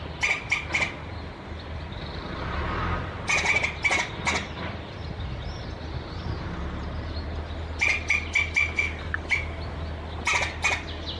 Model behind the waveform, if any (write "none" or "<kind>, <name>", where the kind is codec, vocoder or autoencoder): none